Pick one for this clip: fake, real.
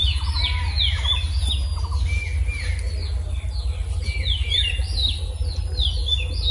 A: real